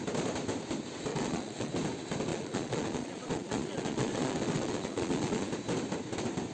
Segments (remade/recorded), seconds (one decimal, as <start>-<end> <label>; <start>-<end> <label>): 0.0-1.1 recorded; 1.1-1.7 remade; 1.7-2.3 recorded; 2.3-5.5 remade; 5.5-6.5 recorded